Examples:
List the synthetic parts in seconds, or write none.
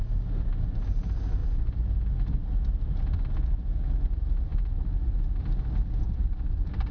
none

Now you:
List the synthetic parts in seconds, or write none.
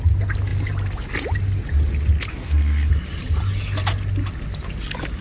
2.3-2.9